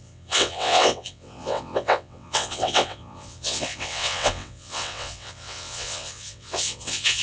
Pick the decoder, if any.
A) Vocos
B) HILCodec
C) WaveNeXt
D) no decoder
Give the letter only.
C